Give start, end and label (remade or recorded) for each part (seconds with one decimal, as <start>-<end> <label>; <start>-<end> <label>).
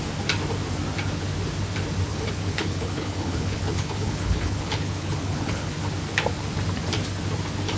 0.0-2.1 recorded; 2.1-5.8 remade; 5.8-7.8 recorded